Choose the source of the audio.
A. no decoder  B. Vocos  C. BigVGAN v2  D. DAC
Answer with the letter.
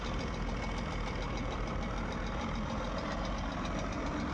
A